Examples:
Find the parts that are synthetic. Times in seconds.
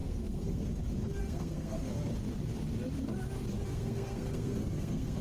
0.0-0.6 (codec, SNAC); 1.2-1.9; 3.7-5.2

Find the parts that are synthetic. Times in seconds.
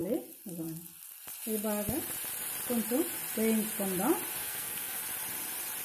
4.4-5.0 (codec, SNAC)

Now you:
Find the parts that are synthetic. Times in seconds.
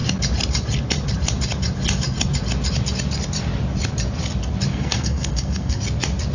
4.7-5.8 (codec, SNAC)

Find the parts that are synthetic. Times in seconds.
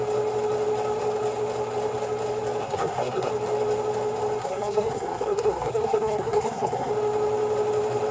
2.6-3.3 (codec, SNAC); 4.4-6.9